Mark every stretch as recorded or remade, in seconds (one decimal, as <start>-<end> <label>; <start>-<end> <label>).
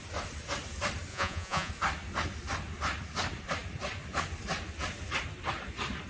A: 0.0-1.1 recorded; 1.1-1.7 remade; 1.7-6.1 recorded